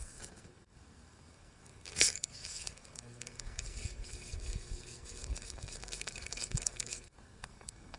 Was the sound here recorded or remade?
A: remade